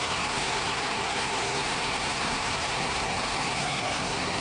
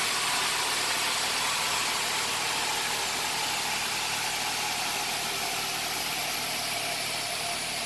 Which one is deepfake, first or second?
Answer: first